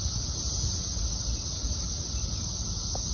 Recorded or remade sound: recorded